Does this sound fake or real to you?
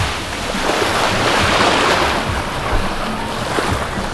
real